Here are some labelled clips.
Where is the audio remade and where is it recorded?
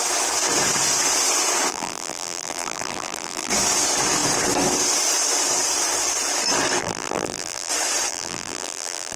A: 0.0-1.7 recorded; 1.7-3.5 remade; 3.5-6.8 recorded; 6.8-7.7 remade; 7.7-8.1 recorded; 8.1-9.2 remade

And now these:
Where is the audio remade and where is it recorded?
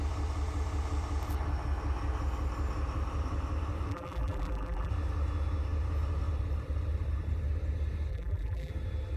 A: 0.0-3.9 recorded; 3.9-4.9 remade; 4.9-8.1 recorded; 8.1-8.7 remade; 8.7-9.2 recorded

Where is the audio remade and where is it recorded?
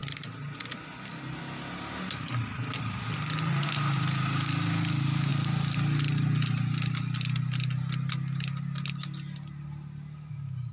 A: 0.0-10.7 recorded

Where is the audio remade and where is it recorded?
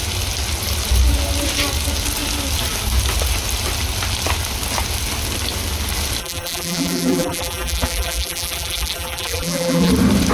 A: 0.0-6.2 recorded; 6.2-9.9 remade; 9.9-10.3 recorded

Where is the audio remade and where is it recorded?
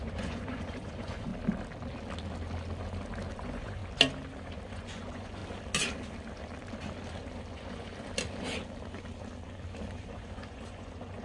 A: 0.0-1.3 remade; 1.3-3.3 recorded; 3.3-3.8 remade; 3.8-4.7 recorded; 4.7-5.4 remade; 5.4-7.5 recorded; 7.5-7.9 remade; 7.9-10.0 recorded; 10.0-11.2 remade